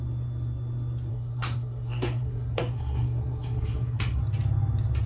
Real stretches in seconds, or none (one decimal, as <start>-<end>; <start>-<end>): 0.0-1.1; 4.2-5.1